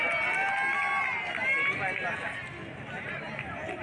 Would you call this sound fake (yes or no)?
no